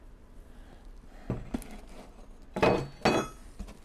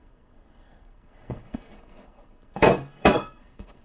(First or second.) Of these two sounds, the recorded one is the first